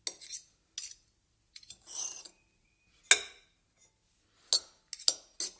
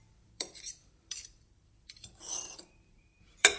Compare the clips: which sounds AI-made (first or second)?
second